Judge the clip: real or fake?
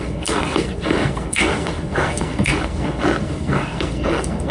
fake